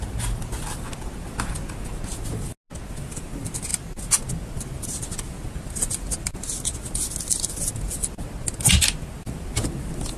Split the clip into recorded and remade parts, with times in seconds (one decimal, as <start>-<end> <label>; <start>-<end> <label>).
0.0-10.2 recorded